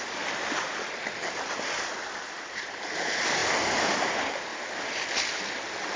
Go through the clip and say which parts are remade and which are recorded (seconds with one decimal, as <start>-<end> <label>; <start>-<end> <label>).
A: 0.0-6.0 recorded